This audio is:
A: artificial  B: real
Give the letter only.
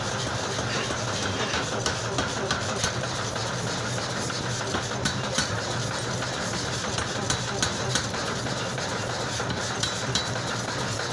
B